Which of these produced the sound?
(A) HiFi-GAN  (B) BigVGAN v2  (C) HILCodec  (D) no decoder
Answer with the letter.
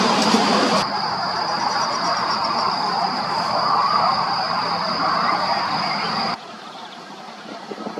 B